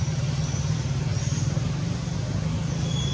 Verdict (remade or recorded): recorded